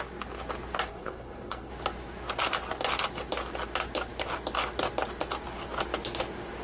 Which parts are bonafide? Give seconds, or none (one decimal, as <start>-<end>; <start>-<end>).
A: 0.0-0.9; 1.7-6.6